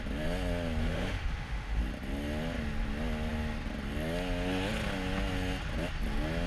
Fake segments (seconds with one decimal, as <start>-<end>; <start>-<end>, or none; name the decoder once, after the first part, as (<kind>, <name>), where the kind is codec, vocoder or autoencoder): 0.8-1.8 (autoencoder, DAC-VAE)